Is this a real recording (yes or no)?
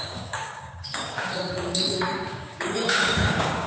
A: no